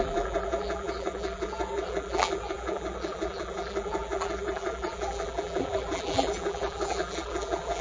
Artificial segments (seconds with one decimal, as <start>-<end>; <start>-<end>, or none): 0.0-7.8